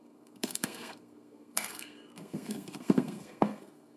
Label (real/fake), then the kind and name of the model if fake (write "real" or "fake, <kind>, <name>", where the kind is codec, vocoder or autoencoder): fake, codec, SNAC